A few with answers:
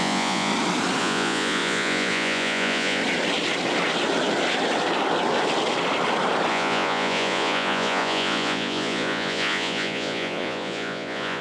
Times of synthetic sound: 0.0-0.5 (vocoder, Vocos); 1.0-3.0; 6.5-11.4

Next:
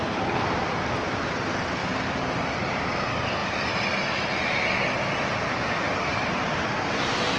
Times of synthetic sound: none

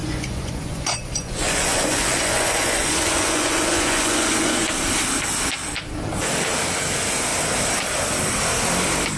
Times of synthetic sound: 0.0-4.7 (vocoder, Vocos)

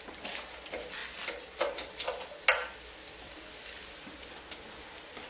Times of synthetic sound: none

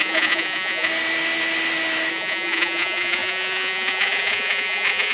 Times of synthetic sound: 0.0-0.9 (vocoder, Vocos); 2.1-5.1